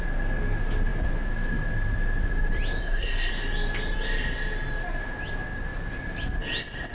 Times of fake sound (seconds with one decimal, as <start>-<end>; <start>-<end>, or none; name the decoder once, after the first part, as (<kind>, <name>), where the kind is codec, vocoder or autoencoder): 2.8-3.3 (codec, SNAC)